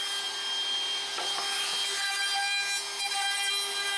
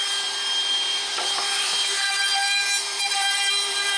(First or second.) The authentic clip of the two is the first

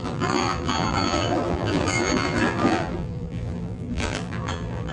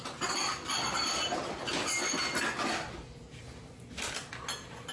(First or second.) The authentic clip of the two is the second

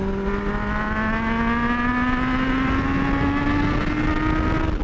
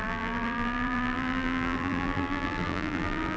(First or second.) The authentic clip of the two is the first